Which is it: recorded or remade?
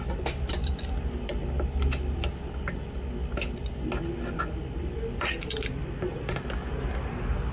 recorded